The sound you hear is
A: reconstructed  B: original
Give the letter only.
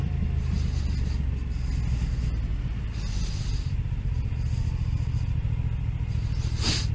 B